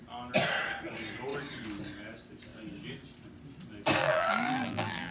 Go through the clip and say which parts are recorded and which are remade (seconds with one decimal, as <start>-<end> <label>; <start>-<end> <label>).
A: 0.0-4.0 recorded; 4.0-5.1 remade